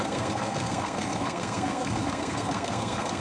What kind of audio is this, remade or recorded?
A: remade